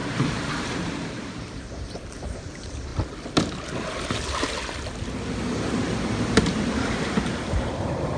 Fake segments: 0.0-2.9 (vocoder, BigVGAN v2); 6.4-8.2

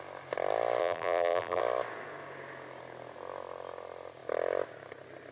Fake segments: 0.8-1.6 (vocoder, BigVGAN v2)

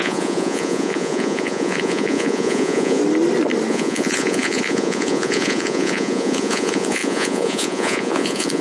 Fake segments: 0.0-3.0 (vocoder, Vocos); 3.7-8.6

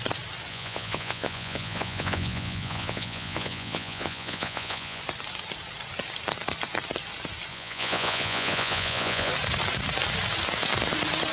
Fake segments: 0.5-5.0 (vocoder, Vocos); 7.5-9.3

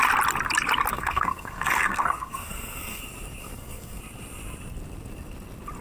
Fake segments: 0.9-3.0 (codec, SNAC); 3.4-4.0

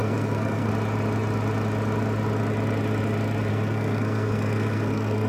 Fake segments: 0.0-0.7 (codec, SNAC); 3.5-5.3

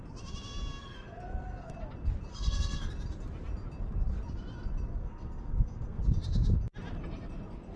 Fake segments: 0.8-1.7 (codec, SNAC); 2.3-2.9; 5.0-6.0

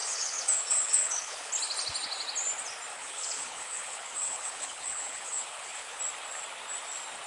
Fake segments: 0.0-1.5 (codec, HILCodec); 2.9-6.0